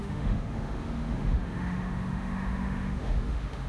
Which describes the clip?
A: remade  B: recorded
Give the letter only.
A